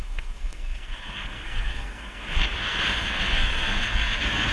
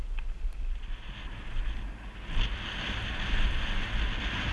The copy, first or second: first